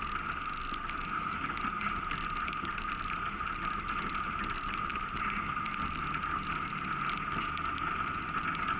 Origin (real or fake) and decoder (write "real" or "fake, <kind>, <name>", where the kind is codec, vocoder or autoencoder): real